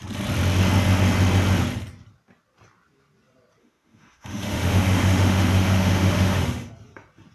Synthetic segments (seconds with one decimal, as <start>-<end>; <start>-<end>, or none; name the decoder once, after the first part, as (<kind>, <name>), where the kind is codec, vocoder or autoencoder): 3.6-6.7 (autoencoder, DAC-VAE)